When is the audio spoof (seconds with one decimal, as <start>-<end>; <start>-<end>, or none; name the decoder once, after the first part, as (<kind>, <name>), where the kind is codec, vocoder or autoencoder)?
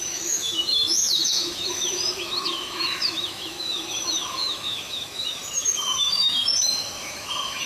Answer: 0.0-7.7 (autoencoder, DAC-VAE)